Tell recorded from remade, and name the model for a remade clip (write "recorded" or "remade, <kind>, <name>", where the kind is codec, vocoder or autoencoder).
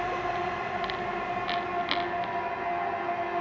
recorded